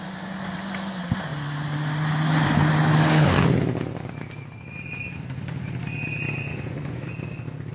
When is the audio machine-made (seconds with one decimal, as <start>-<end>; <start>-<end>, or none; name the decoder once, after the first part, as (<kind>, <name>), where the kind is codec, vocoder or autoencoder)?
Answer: 6.5-7.1 (vocoder, Vocos)